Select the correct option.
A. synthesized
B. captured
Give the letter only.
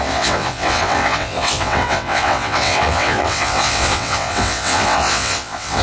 A